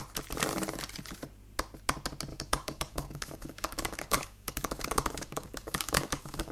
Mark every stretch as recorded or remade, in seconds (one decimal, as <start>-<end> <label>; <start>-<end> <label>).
0.0-2.3 recorded; 2.3-6.5 remade

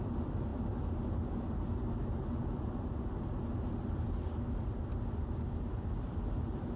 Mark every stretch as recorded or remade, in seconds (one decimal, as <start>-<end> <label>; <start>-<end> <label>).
0.0-6.8 recorded

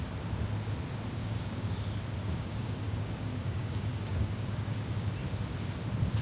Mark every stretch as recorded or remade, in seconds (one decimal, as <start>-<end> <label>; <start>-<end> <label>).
0.0-1.2 recorded; 1.2-1.7 remade; 1.7-2.2 recorded; 2.2-5.1 remade; 5.1-6.2 recorded

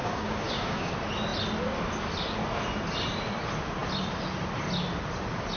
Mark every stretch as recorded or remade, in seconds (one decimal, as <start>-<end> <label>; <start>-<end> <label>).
0.0-0.9 remade; 0.9-5.6 recorded

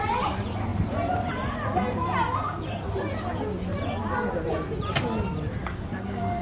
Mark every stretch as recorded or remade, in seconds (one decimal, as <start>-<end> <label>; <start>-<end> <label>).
0.0-5.6 recorded; 5.6-6.4 remade